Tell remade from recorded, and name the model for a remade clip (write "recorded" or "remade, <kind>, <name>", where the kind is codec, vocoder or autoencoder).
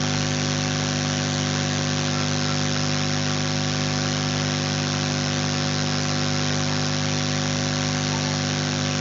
recorded